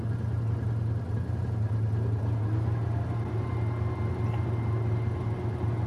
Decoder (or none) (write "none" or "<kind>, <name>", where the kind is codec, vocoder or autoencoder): none